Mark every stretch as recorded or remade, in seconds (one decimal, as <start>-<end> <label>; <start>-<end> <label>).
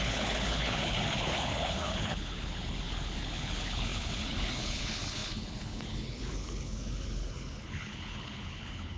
0.0-9.0 remade